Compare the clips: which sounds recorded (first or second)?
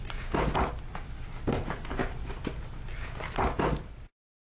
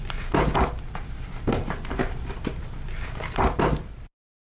first